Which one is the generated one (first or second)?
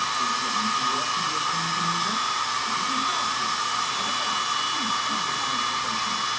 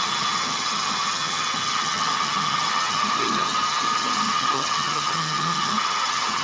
second